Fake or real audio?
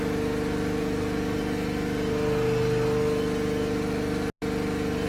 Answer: real